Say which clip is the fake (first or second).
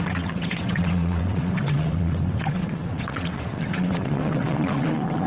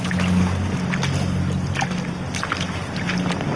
first